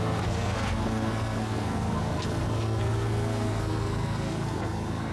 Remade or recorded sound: remade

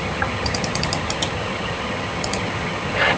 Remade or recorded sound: remade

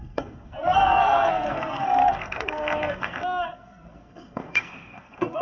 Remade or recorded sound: remade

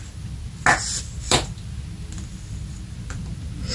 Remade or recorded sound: recorded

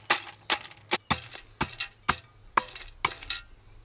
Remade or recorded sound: recorded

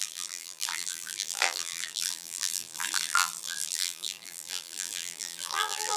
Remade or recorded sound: remade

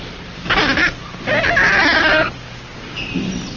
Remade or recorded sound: remade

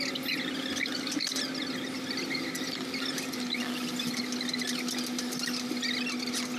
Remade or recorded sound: recorded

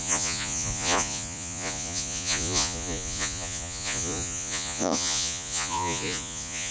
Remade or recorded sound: remade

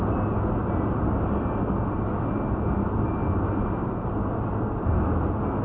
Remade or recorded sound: recorded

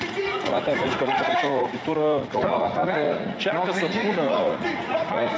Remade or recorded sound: remade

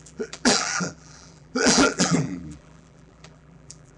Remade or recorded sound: remade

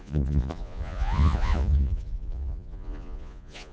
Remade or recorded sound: remade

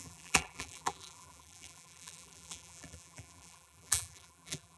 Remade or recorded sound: remade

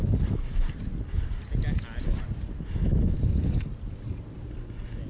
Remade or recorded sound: recorded